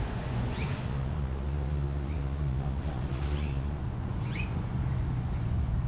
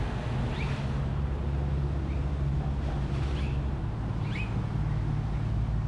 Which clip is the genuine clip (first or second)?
second